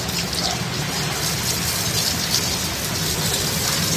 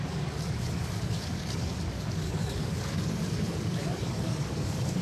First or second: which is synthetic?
second